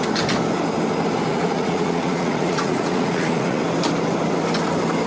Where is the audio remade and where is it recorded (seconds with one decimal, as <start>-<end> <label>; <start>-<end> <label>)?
0.0-1.3 recorded; 1.3-3.6 remade; 3.6-5.1 recorded